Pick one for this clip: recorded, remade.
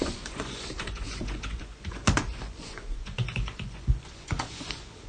remade